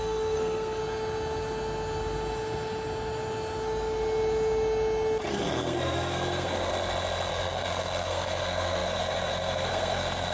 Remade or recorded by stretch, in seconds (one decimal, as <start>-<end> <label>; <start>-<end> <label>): 0.0-0.8 remade; 0.8-5.3 recorded; 5.3-6.7 remade; 6.7-7.3 recorded; 7.3-10.3 remade